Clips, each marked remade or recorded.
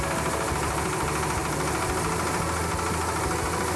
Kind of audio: recorded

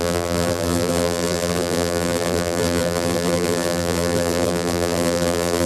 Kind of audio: remade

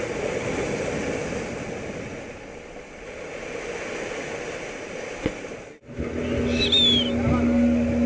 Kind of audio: recorded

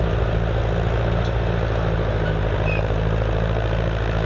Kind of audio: recorded